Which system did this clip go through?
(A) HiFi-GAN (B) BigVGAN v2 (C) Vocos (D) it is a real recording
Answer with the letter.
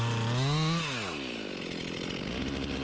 D